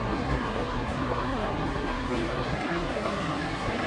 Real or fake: fake